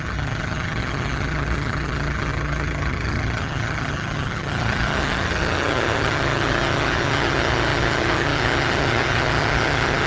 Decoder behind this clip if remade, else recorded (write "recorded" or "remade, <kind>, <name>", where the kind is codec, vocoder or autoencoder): remade, vocoder, HiFi-GAN